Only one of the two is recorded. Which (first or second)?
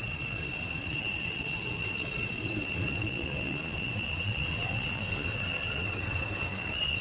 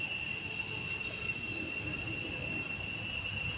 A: second